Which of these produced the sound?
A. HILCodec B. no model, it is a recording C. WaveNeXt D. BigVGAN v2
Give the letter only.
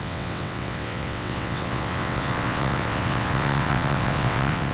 C